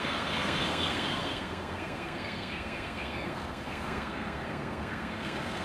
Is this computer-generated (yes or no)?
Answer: yes